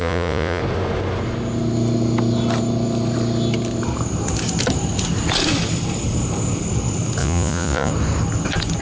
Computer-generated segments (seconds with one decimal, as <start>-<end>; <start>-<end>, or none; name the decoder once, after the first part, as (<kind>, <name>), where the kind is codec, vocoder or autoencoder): 0.0-0.6 (vocoder, Vocos); 7.2-7.9